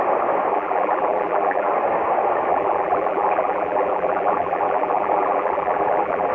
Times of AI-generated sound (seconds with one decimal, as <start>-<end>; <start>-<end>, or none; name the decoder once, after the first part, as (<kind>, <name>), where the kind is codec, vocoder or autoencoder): 0.5-1.7 (vocoder, BigVGAN v2); 2.5-6.3